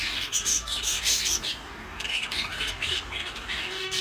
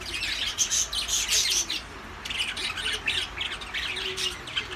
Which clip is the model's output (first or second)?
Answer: first